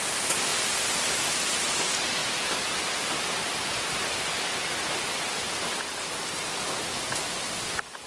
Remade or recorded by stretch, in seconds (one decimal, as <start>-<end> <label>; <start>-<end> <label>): 0.0-8.1 recorded